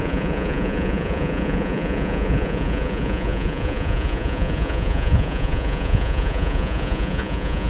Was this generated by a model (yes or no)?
yes